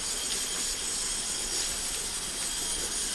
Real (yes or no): yes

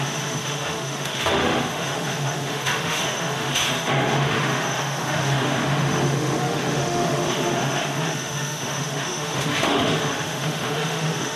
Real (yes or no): no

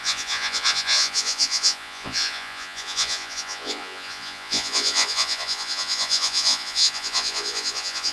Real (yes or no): no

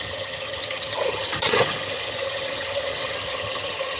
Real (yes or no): no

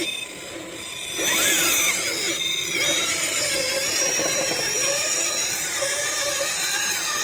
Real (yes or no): yes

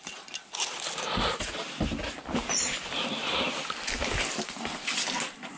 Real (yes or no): yes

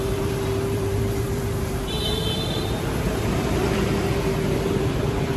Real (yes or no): no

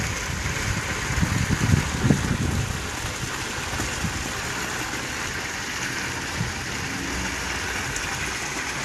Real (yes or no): yes